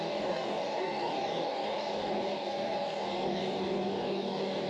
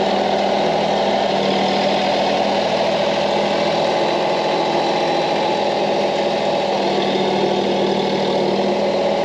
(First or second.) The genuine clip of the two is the second